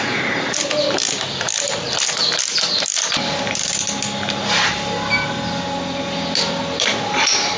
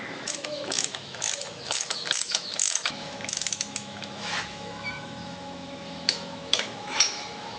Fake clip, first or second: second